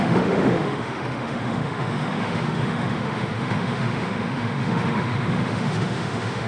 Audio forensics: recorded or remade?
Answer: remade